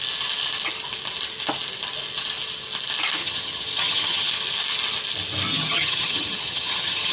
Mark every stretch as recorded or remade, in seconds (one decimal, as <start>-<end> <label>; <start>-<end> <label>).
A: 0.0-3.2 recorded; 3.2-4.3 remade; 4.3-5.5 recorded; 5.5-7.1 remade